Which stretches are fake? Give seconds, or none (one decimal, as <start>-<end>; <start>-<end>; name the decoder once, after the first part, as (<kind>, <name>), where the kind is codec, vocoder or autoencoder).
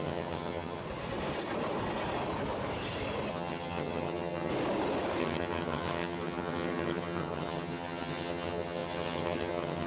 0.0-0.8 (vocoder, HiFi-GAN); 3.3-4.5; 5.2-9.9